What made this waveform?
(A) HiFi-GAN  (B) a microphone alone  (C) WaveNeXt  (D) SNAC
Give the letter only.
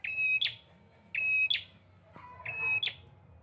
B